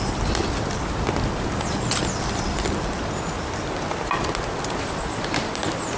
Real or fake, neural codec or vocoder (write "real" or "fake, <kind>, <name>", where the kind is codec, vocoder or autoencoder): real